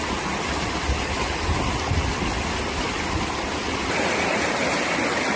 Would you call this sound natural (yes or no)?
yes